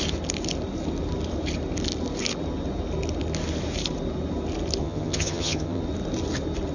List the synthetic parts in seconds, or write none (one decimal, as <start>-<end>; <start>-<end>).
4.8-5.8